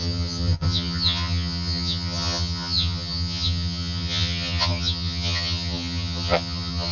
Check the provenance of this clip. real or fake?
fake